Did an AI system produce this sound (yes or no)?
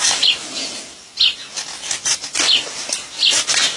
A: no